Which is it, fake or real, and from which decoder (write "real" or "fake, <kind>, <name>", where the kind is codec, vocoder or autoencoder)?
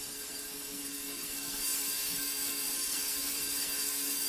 fake, codec, SNAC